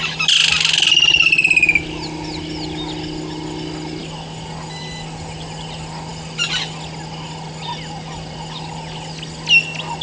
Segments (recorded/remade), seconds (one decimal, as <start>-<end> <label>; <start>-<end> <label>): 0.0-10.0 recorded